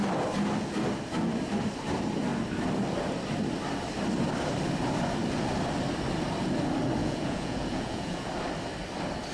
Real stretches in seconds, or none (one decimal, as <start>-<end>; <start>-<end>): 0.0-7.0; 8.3-9.3